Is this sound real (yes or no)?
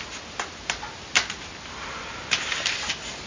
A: yes